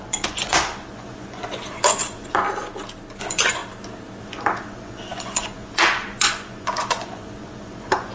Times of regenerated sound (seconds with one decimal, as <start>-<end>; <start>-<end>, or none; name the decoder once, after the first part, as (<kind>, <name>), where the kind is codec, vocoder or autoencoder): 0.0-2.4 (vocoder, Vocos); 3.2-3.6; 4.2-8.1